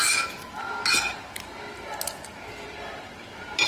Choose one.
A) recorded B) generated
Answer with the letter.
A